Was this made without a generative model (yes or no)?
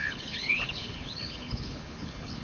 no